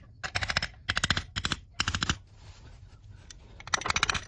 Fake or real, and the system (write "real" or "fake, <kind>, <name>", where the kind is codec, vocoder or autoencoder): real